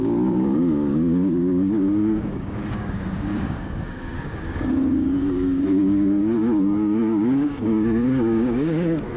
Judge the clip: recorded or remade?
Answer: remade